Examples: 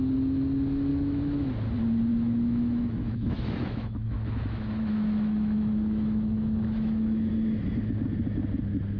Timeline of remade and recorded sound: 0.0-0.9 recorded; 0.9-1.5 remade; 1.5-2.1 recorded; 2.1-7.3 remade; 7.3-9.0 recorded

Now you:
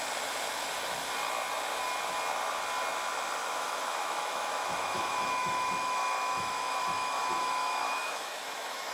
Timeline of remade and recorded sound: 0.0-3.4 recorded; 3.4-8.9 remade

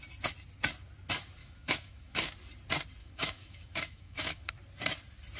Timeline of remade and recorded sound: 0.0-1.4 recorded; 1.4-2.3 remade; 2.3-3.0 recorded; 3.0-4.5 remade; 4.5-5.4 recorded

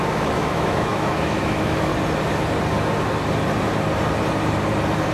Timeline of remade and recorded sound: 0.0-1.9 remade; 1.9-5.1 recorded

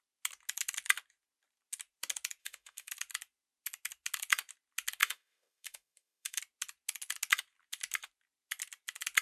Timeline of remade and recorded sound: 0.0-2.4 recorded; 2.4-2.9 remade; 2.9-5.0 recorded; 5.0-6.4 remade; 6.4-9.2 recorded

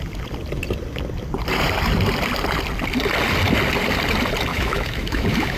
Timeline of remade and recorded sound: 0.0-4.5 recorded; 4.5-5.6 remade